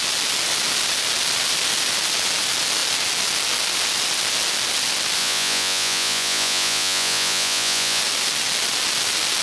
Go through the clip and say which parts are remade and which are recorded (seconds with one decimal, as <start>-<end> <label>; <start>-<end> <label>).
0.0-5.2 recorded; 5.2-8.0 remade; 8.0-9.4 recorded